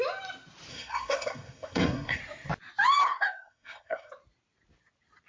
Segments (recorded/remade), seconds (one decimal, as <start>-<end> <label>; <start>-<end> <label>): 0.0-0.7 recorded; 0.7-2.2 remade; 2.2-3.0 recorded; 3.0-4.1 remade; 4.1-5.3 recorded